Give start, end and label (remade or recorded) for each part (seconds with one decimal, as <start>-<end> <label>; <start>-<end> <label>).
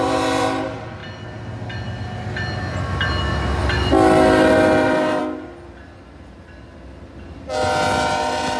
0.0-8.6 recorded